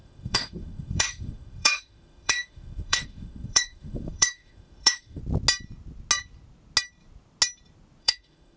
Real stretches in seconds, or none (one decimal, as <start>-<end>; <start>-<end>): 5.2-8.0